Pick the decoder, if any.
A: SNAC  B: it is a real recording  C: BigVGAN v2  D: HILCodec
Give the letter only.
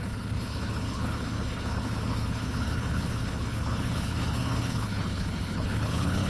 D